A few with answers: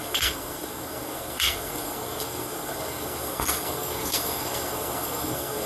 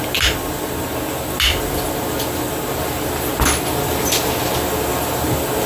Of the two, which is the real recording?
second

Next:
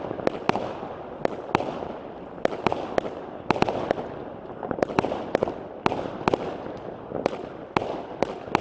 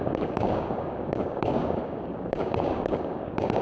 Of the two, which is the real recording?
first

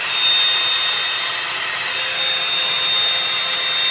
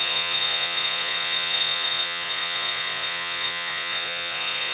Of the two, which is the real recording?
first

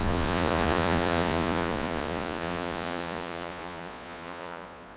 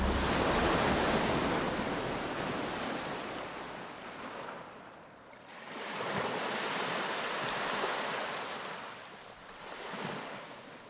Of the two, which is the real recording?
second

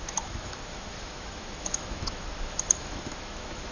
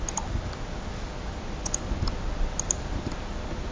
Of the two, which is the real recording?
second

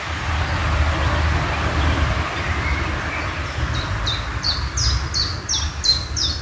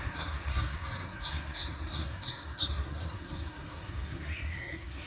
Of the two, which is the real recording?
first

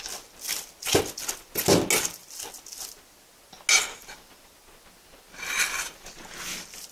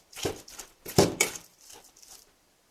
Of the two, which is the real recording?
first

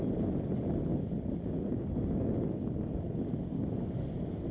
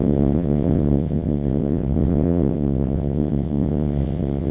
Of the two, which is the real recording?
first